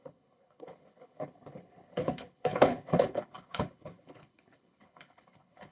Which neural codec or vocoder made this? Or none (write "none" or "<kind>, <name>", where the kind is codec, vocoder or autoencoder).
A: codec, HILCodec